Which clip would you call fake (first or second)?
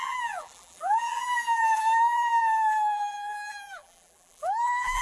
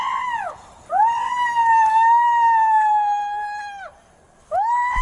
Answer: first